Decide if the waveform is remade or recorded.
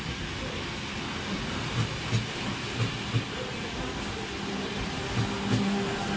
recorded